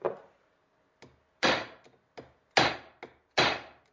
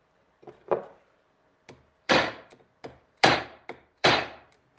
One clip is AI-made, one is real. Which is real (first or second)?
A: first